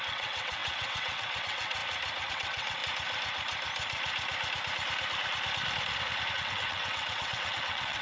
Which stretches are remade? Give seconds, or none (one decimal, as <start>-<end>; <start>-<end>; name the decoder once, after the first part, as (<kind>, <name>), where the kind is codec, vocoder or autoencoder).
0.0-1.8 (vocoder, WaveNeXt); 2.3-2.8; 6.3-8.0